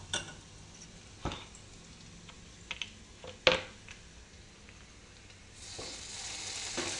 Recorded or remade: recorded